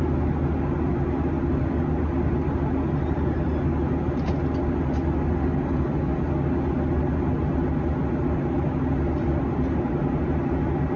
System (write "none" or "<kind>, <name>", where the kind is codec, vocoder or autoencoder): none